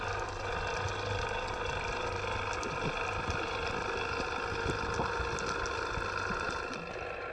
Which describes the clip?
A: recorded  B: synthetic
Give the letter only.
A